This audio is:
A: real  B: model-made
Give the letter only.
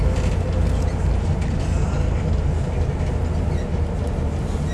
A